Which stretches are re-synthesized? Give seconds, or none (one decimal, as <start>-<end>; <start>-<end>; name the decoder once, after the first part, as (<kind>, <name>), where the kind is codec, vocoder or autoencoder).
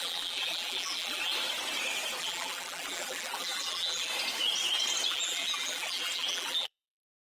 0.0-1.3 (vocoder, BigVGAN v2); 2.2-4.1; 5.1-7.2